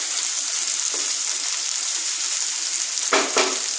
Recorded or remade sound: recorded